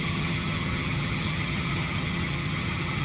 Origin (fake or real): fake